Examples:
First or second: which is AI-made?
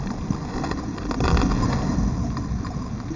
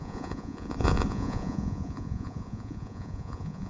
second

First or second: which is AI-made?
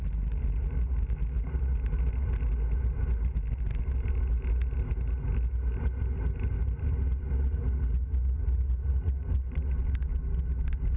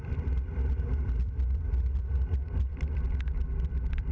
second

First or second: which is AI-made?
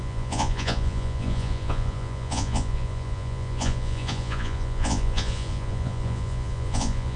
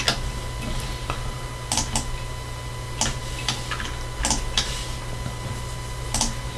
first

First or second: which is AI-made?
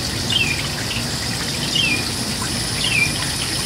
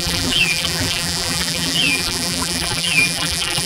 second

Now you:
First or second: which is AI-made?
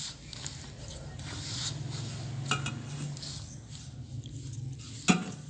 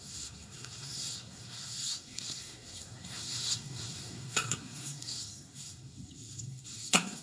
second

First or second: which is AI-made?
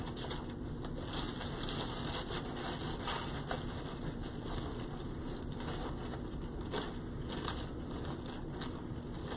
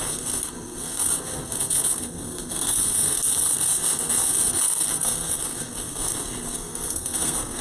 second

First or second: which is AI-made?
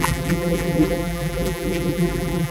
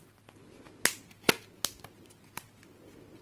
first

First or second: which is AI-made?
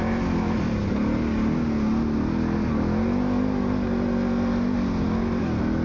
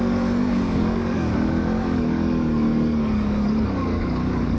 second